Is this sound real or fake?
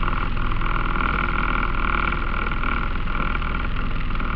real